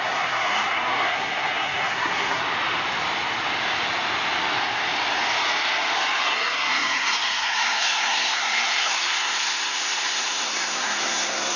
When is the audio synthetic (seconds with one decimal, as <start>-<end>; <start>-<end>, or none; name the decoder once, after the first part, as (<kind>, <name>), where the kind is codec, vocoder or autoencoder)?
0.0-2.4 (codec, SNAC); 6.2-11.6